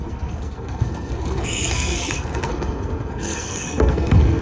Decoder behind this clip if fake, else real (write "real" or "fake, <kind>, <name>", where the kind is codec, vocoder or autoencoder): fake, codec, SNAC